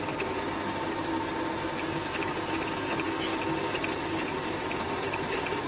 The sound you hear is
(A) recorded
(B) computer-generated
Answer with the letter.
A